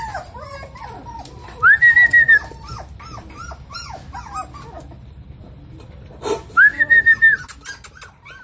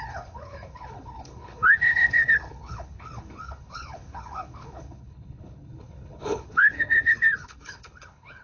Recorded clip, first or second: first